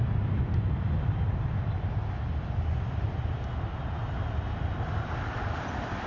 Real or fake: real